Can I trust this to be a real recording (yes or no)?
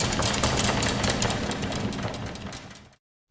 yes